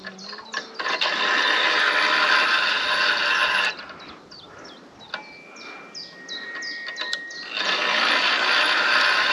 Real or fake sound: real